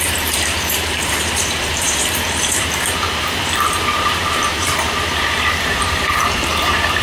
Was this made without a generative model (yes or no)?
no